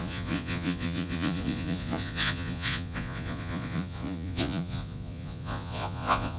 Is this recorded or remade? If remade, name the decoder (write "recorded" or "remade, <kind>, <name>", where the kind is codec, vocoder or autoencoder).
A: remade, vocoder, Vocos